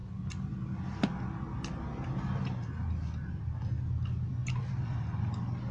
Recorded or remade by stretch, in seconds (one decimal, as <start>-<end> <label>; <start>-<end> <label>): 0.0-5.7 recorded